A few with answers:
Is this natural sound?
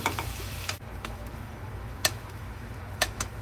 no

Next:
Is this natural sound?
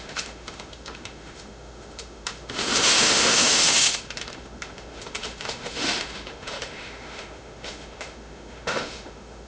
no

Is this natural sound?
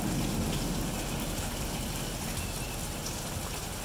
yes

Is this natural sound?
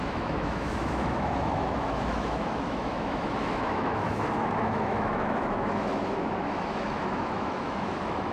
no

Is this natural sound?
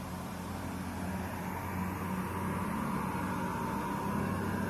yes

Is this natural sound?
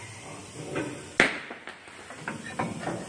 yes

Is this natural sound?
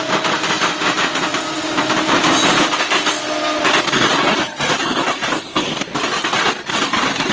yes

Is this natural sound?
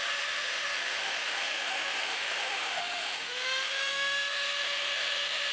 no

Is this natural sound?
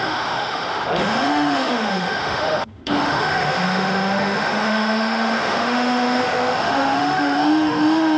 no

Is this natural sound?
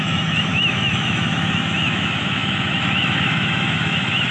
no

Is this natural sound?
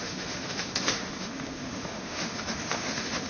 no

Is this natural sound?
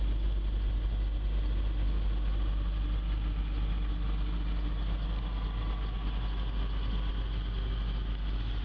yes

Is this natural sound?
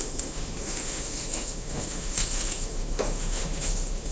no